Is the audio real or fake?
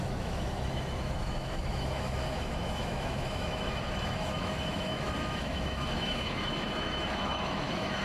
fake